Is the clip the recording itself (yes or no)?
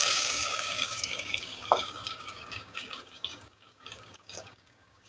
no